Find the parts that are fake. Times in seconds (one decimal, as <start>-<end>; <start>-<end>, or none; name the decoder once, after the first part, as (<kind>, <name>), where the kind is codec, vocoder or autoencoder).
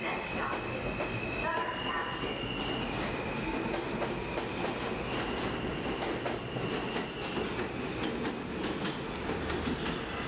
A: none